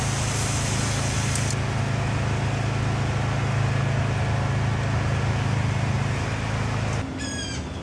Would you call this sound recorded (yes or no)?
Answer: yes